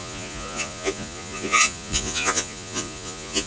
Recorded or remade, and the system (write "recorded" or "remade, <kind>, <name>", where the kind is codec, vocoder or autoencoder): remade, vocoder, Vocos